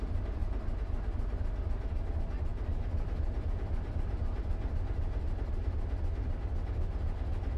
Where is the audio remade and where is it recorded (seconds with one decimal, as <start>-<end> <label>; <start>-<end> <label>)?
0.0-7.6 recorded